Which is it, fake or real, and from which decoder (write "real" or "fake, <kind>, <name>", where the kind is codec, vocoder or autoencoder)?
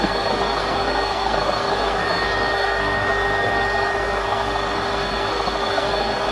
fake, codec, SNAC